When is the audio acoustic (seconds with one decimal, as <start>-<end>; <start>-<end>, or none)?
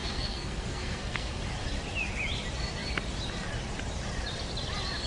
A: 1.4-5.1